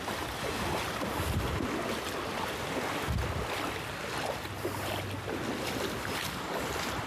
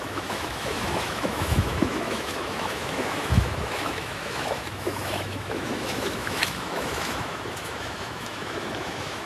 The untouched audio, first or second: first